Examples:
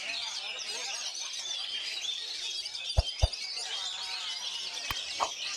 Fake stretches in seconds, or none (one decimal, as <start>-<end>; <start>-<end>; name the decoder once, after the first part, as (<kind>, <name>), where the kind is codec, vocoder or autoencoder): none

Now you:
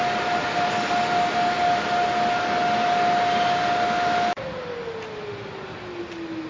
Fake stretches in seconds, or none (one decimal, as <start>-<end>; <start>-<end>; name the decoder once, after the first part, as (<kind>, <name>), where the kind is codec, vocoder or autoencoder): none

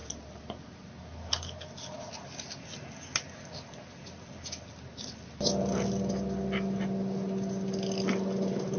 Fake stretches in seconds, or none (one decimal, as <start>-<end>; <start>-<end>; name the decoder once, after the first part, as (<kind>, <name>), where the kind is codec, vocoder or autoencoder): none

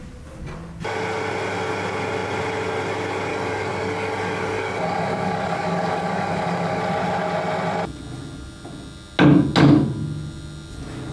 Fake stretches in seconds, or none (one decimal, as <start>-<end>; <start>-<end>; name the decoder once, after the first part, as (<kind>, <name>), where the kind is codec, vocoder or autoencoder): 3.3-6.8 (codec, DAC)

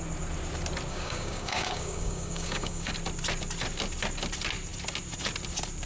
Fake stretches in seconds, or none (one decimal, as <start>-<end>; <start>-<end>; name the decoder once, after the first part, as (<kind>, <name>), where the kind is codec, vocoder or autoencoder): 0.9-2.9 (codec, DAC)

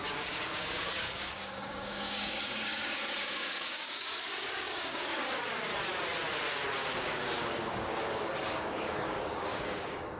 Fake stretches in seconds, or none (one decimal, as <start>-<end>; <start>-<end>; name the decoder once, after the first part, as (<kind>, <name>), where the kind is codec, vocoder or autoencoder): 0.0-5.7 (codec, DAC); 7.0-10.2